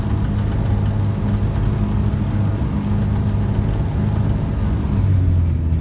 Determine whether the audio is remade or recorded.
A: recorded